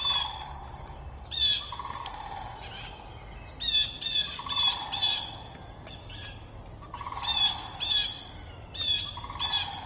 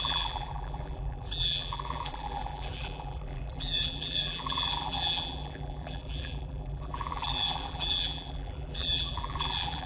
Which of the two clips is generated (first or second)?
second